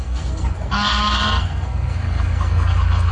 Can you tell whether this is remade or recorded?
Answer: remade